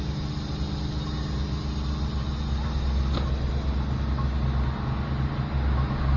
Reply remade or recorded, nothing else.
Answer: recorded